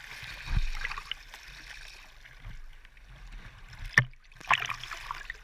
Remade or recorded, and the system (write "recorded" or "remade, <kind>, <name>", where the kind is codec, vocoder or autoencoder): recorded